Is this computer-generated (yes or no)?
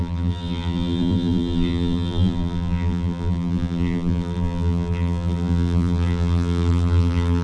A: yes